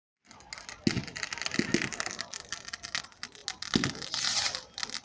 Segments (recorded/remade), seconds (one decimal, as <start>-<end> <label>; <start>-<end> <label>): 0.0-5.0 recorded